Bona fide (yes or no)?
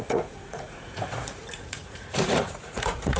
no